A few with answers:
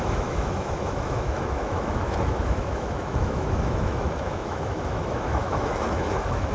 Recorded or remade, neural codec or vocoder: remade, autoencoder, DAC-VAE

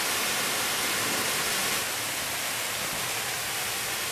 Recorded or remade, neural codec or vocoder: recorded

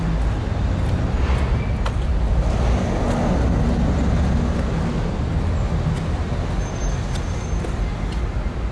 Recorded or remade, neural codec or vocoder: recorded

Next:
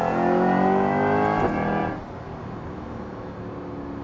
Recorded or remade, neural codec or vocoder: recorded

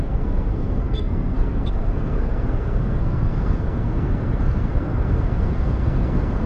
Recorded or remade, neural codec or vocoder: remade, codec, SNAC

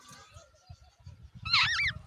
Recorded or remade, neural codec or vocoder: recorded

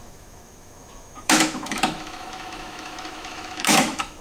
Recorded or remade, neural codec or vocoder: remade, autoencoder, DAC-VAE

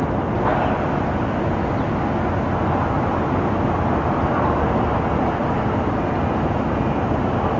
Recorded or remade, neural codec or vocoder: recorded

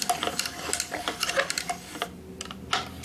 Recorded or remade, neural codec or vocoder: recorded